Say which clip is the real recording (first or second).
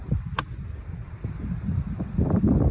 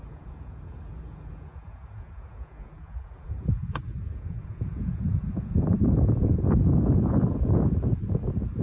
first